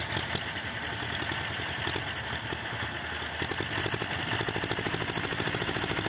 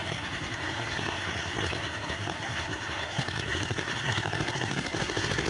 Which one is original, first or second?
first